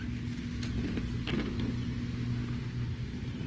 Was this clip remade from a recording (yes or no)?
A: no